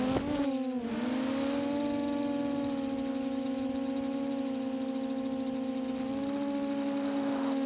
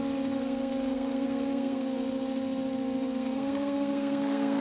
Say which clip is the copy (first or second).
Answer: second